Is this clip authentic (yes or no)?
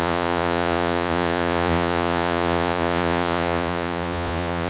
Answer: no